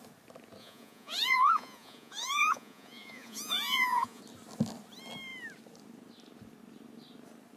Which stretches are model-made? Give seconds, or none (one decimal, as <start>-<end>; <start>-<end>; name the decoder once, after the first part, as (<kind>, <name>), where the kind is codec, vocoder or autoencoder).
0.6-4.2 (vocoder, Vocos)

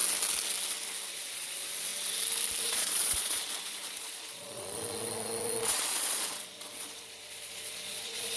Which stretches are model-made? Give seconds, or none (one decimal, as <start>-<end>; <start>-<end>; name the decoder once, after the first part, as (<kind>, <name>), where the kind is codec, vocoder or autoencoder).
1.1-1.9 (vocoder, Vocos); 2.6-8.4

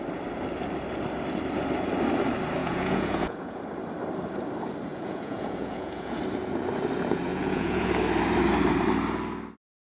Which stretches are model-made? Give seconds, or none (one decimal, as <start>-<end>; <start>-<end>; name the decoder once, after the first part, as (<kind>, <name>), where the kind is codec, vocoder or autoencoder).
2.6-3.6 (vocoder, Vocos); 4.9-6.2; 7.3-7.9

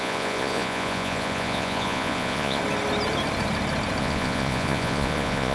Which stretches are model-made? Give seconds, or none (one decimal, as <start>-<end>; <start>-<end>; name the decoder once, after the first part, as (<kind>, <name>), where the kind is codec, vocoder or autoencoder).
0.0-2.6 (vocoder, Vocos); 4.0-5.5